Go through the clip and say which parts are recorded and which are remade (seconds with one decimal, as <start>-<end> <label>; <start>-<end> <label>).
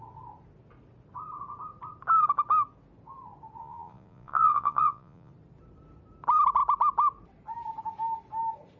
0.0-3.6 recorded; 3.6-5.3 remade; 5.3-8.8 recorded